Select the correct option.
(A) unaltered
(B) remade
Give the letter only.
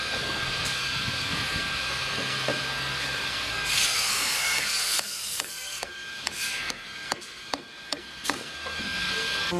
B